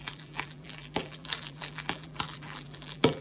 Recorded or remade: remade